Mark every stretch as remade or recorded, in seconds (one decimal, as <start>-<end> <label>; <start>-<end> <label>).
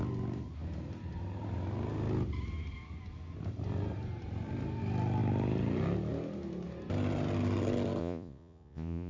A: 0.0-8.0 recorded; 8.0-9.1 remade